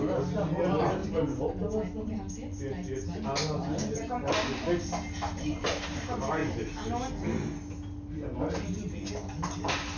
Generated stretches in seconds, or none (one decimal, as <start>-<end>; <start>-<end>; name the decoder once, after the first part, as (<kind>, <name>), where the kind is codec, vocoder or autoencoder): none